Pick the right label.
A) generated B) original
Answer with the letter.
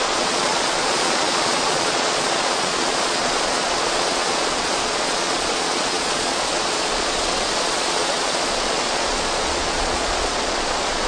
A